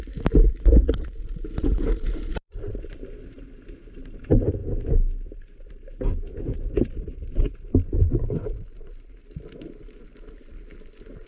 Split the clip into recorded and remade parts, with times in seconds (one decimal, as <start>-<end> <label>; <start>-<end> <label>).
0.0-11.3 remade